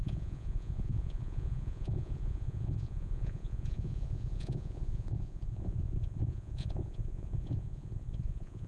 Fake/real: fake